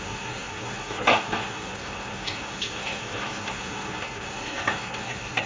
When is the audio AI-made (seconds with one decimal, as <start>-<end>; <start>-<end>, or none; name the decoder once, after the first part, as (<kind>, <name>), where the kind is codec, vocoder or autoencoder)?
0.0-5.5 (codec, SNAC)